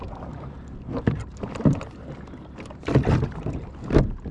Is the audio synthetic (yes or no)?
no